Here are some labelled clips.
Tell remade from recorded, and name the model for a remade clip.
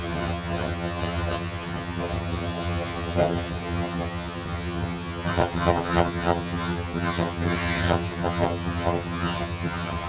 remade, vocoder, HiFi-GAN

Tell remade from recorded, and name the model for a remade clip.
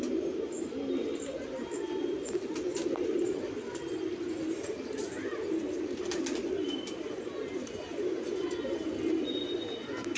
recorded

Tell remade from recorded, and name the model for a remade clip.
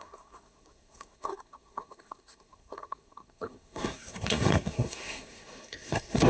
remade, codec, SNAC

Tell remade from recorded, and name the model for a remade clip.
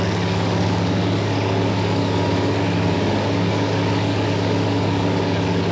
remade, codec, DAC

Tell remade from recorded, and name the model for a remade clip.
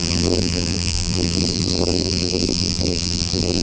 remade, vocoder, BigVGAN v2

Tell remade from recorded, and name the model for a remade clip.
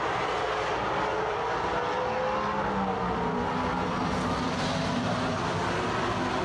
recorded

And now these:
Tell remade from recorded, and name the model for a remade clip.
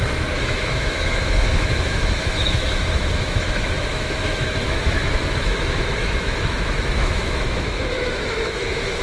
remade, autoencoder, DAC-VAE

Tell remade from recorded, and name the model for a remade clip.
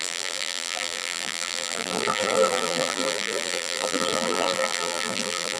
remade, vocoder, BigVGAN v2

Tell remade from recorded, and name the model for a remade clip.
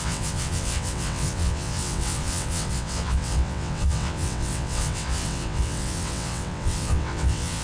remade, vocoder, WaveNeXt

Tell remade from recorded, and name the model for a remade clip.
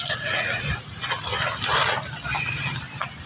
recorded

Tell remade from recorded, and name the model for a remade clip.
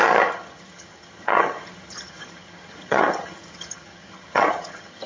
remade, vocoder, HiFi-GAN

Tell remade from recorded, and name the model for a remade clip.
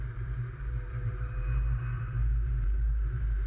remade, vocoder, BigVGAN v2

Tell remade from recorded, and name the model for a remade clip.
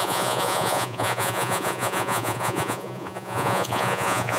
remade, vocoder, Vocos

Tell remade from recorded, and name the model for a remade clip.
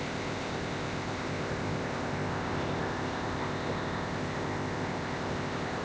remade, codec, ZipCodec